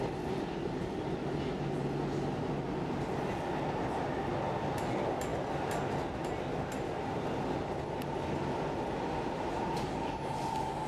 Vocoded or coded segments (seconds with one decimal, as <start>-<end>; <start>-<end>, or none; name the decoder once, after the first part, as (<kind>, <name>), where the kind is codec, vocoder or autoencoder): none